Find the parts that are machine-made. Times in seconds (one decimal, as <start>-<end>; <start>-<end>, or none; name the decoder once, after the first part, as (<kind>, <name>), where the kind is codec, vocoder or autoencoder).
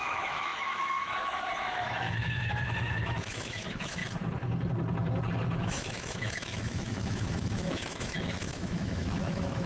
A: 0.0-4.0 (autoencoder, DAC-VAE); 5.6-9.7